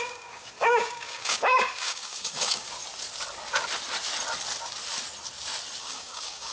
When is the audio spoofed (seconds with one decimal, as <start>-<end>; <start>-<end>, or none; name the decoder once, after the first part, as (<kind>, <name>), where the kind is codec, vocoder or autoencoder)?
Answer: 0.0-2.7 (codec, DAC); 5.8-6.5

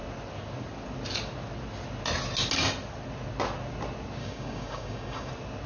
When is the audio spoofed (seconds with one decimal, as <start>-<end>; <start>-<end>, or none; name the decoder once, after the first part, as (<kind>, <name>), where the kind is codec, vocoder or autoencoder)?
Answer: 4.2-5.3 (codec, DAC)

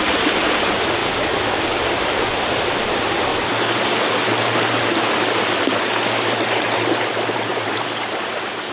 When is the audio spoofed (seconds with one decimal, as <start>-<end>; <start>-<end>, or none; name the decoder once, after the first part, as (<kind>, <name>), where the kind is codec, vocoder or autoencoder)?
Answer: none

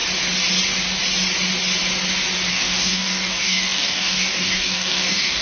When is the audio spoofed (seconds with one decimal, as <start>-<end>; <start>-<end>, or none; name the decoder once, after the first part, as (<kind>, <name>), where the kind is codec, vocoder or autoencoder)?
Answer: 2.5-5.4 (codec, DAC)

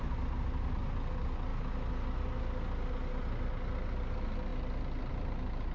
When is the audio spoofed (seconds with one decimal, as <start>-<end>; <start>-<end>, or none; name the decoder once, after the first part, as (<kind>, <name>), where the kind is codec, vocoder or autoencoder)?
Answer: none

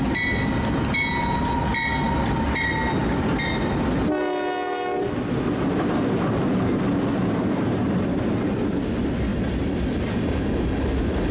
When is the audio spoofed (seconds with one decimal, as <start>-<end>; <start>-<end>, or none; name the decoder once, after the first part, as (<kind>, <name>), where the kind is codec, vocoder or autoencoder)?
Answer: none

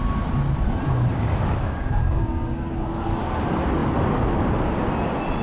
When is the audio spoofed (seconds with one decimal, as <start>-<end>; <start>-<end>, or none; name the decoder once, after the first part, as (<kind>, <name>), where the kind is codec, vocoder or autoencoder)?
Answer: 1.1-3.4 (codec, DAC)